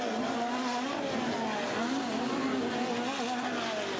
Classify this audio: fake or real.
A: real